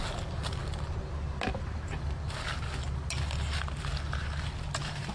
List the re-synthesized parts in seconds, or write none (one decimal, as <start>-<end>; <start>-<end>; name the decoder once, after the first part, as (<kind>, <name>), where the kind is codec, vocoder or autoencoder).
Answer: none